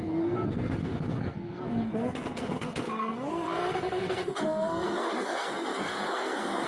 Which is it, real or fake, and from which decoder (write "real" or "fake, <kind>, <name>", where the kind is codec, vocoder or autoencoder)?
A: fake, codec, SNAC